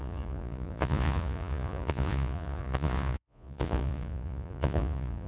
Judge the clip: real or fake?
fake